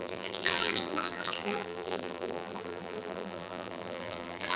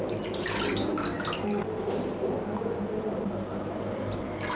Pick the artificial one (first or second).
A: first